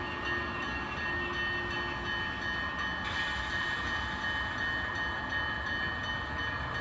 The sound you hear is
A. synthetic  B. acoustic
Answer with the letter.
B